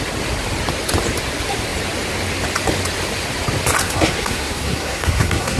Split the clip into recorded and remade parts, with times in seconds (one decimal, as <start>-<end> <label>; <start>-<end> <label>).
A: 0.0-3.8 recorded; 3.8-5.6 remade